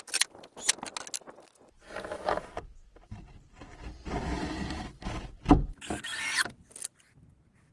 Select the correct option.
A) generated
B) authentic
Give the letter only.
B